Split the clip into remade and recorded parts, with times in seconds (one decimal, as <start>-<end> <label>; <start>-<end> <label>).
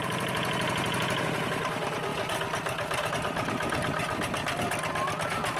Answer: 0.0-5.6 recorded